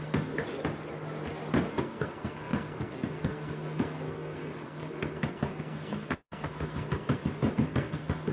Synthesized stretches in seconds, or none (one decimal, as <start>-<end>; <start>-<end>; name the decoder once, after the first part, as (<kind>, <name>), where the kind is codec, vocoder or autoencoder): 0.0-0.4 (codec, SNAC); 1.7-8.3